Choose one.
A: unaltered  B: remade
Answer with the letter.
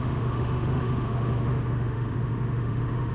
B